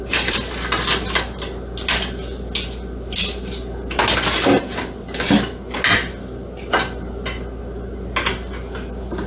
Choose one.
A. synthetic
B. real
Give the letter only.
B